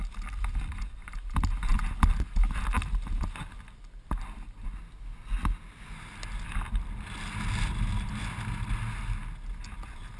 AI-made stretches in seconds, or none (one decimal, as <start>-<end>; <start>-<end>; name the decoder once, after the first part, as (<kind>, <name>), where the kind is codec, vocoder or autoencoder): none